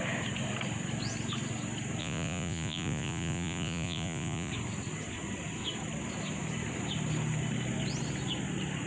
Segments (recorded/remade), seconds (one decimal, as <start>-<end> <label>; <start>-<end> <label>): 0.0-2.0 recorded; 2.0-4.5 remade; 4.5-8.9 recorded